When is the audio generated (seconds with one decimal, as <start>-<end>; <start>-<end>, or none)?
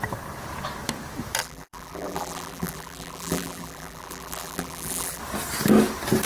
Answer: 1.4-5.2